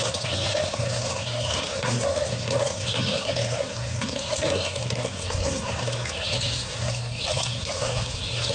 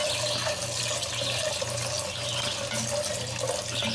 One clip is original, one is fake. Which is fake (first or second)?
first